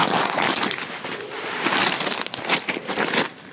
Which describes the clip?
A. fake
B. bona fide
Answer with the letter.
B